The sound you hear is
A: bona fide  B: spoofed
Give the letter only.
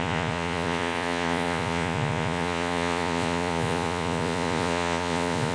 B